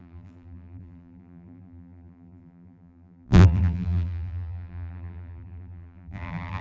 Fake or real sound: fake